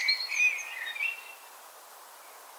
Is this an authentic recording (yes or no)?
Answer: yes